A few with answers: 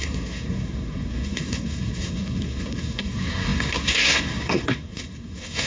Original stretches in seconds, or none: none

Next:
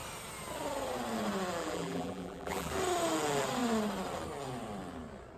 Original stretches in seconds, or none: 0.0-1.6; 2.7-5.4

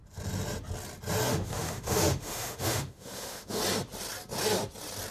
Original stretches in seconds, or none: 0.0-1.3; 3.6-5.1

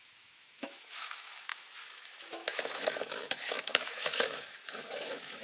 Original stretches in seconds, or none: none

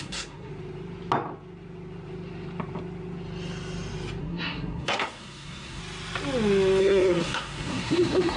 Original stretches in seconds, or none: 0.5-4.2; 5.8-6.8